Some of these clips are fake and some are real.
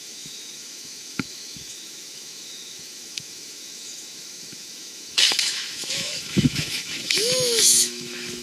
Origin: fake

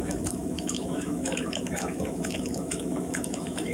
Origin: fake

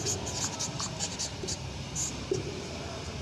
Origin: real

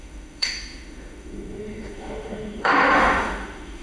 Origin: fake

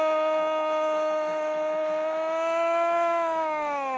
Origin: fake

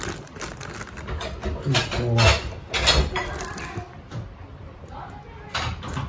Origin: real